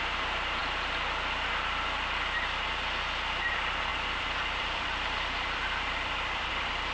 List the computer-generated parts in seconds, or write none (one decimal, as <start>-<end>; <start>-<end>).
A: 0.0-0.6; 3.5-6.9